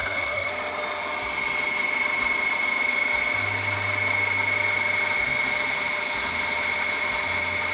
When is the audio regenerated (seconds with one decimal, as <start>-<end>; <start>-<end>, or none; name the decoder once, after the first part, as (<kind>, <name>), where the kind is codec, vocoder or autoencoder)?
0.0-0.5 (codec, SNAC)